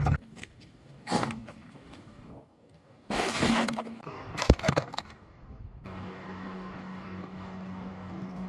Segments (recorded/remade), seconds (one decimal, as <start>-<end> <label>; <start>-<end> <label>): 0.0-8.5 remade